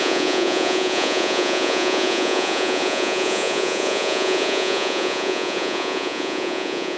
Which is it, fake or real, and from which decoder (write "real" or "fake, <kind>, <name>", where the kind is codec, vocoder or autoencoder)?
fake, vocoder, Vocos